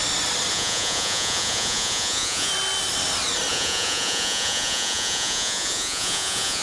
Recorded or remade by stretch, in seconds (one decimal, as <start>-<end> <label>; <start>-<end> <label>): 0.0-0.5 recorded; 0.5-2.5 remade; 2.5-3.5 recorded; 3.5-6.6 remade